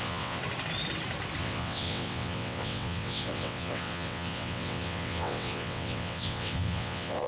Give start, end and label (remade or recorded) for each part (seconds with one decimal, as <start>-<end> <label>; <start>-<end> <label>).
0.0-0.4 remade; 0.4-1.4 recorded; 1.4-7.3 remade